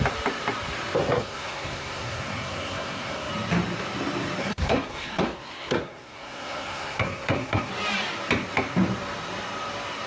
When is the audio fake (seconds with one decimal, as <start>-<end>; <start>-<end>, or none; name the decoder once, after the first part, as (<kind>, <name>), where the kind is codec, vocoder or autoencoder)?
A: 1.0-3.3 (codec, SNAC); 4.4-7.7